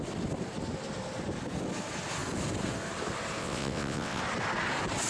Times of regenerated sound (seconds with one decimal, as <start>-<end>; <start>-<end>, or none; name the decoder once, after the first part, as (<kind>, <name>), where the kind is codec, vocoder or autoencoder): 3.4-4.2 (vocoder, WaveNeXt)